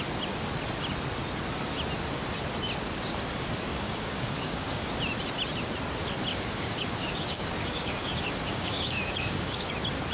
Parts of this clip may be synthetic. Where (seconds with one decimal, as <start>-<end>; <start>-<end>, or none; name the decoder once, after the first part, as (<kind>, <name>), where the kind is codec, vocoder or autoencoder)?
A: 3.7-4.9 (codec, DAC); 6.3-9.7